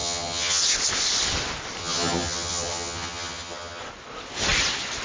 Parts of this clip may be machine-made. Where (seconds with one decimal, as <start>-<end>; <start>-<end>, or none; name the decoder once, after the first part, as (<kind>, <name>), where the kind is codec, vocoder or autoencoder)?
0.0-0.6 (vocoder, HiFi-GAN); 1.8-3.8